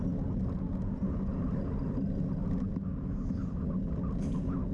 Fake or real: real